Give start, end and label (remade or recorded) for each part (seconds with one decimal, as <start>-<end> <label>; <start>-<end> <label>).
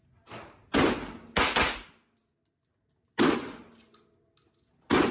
0.0-5.1 recorded